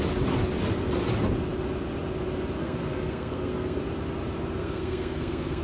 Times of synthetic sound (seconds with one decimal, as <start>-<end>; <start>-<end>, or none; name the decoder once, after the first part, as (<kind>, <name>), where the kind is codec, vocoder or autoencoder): 2.6-3.8 (codec, SNAC); 4.6-5.6